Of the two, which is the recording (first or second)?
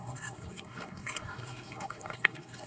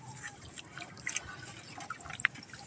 second